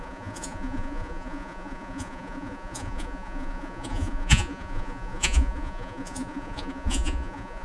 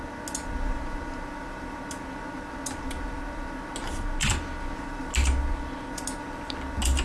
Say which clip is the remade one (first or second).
first